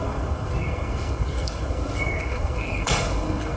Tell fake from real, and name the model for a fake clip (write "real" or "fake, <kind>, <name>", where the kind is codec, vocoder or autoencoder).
fake, codec, SNAC